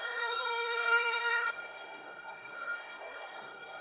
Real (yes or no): no